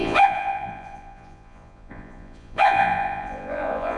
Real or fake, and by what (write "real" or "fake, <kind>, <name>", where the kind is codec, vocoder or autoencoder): fake, vocoder, Vocos